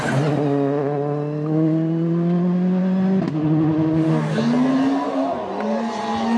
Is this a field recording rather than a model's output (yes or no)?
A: yes